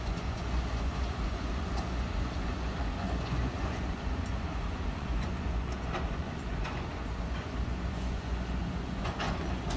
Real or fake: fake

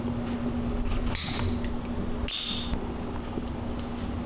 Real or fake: real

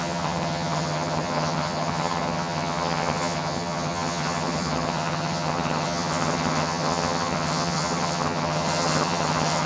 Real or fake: fake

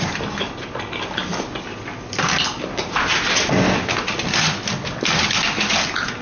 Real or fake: real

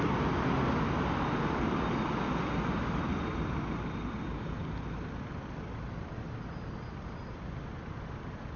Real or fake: real